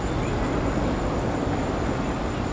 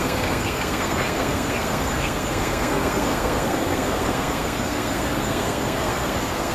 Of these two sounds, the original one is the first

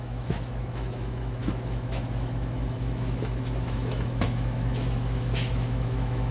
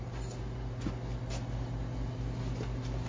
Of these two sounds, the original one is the second